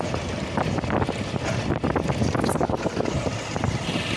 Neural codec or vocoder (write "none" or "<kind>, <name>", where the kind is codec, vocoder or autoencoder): none